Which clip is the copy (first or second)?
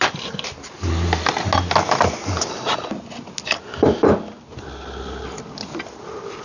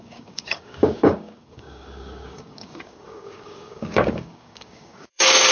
second